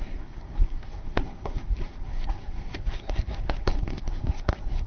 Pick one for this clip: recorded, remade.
remade